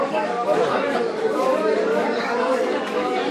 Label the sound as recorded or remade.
remade